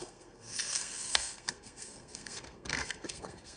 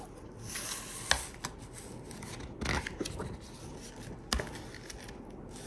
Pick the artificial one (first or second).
first